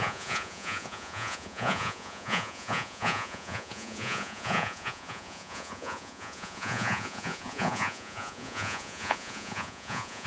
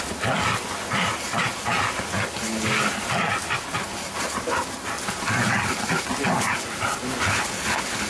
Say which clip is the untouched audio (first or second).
second